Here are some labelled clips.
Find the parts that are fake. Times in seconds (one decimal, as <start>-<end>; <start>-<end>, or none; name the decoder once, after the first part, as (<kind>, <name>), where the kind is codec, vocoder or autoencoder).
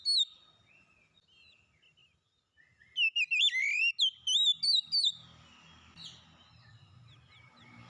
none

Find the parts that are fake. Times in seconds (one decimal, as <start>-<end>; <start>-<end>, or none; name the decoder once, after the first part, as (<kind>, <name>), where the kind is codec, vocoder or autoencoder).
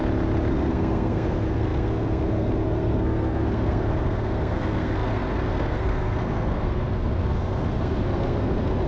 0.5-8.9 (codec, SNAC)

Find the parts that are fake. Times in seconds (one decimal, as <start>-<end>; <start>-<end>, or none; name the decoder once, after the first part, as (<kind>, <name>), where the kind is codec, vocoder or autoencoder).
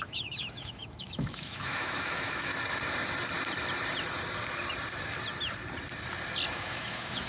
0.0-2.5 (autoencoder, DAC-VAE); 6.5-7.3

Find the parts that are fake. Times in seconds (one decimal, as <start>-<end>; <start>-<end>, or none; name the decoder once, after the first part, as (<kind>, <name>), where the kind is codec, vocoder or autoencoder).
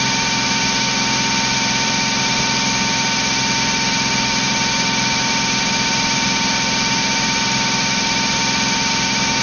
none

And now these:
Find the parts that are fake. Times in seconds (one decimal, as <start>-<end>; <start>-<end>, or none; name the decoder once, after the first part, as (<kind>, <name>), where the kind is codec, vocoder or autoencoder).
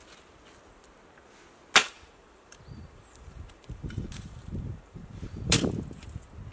1.8-5.7 (vocoder, BigVGAN v2)